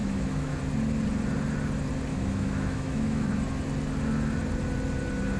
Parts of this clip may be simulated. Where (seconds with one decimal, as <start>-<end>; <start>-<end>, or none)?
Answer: 0.0-0.6; 2.1-3.3